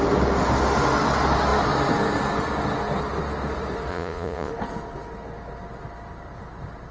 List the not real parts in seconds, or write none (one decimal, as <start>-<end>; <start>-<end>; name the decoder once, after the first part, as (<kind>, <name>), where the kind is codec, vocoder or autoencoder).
3.9-4.5 (vocoder, Vocos)